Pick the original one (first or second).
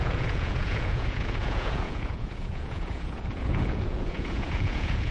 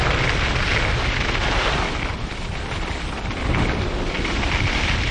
second